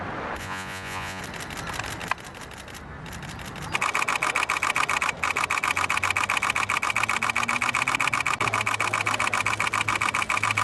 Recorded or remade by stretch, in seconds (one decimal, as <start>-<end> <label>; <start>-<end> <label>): 0.0-0.4 recorded; 0.4-1.2 remade; 1.2-10.6 recorded